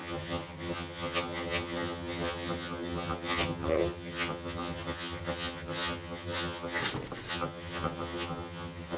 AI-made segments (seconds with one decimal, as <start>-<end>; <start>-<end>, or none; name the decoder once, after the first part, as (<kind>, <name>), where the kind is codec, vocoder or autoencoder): 0.0-6.8 (vocoder, HiFi-GAN); 7.3-9.0